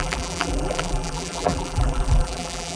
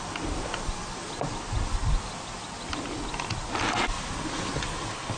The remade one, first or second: first